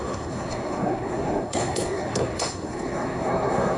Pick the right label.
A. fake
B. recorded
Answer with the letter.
A